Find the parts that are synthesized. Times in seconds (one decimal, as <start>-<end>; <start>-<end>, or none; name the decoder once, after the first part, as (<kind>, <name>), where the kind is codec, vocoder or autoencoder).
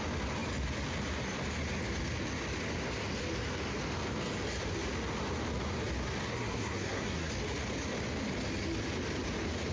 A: 6.3-7.3 (codec, SNAC)